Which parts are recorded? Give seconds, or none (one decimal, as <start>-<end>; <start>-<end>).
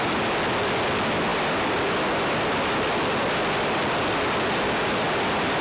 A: 0.0-5.6